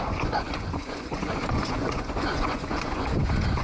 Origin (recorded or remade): remade